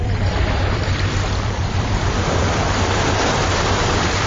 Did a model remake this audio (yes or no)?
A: yes